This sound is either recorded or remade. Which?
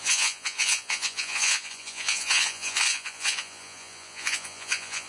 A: remade